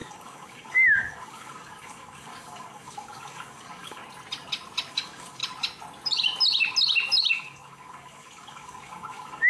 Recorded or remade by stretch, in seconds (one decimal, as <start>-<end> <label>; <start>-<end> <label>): 0.0-4.0 remade; 4.0-4.9 recorded; 4.9-5.4 remade; 5.4-7.3 recorded; 7.3-9.5 remade